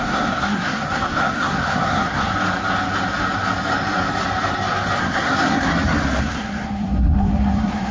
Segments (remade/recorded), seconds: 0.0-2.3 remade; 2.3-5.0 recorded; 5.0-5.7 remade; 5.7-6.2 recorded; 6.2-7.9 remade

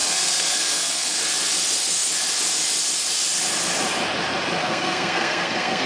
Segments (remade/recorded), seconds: 0.0-1.2 remade; 1.2-4.6 recorded; 4.6-5.9 remade

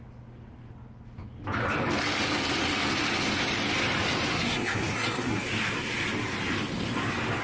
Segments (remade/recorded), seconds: 0.0-4.3 recorded; 4.3-5.4 remade; 5.4-7.4 recorded

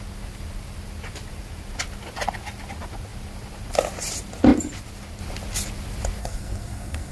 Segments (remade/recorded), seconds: 0.0-6.2 recorded; 6.2-7.1 remade

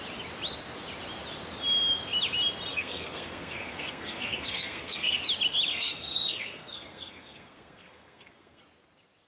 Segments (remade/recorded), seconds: 0.0-2.7 recorded; 2.7-5.2 remade; 5.2-5.7 recorded; 5.7-8.6 remade; 8.6-9.3 recorded

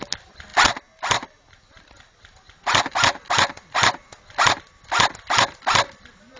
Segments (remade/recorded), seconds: 0.0-6.4 recorded

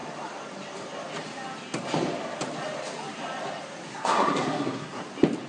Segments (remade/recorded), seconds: 0.0-3.9 recorded; 3.9-5.0 remade; 5.0-5.5 recorded